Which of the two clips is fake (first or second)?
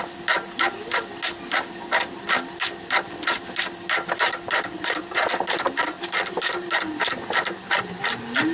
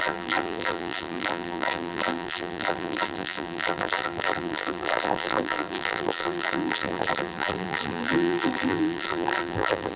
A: second